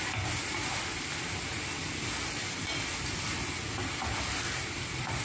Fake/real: real